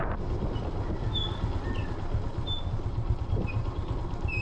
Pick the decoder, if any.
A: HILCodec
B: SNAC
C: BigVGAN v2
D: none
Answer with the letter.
D